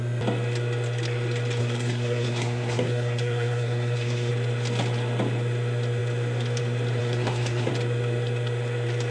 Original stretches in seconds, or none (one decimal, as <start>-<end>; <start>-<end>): 0.0-1.6; 4.3-7.0; 7.7-9.1